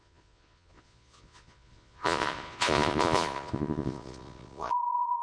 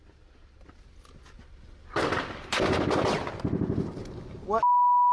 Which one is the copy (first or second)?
first